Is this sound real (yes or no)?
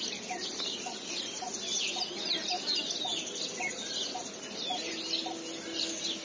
yes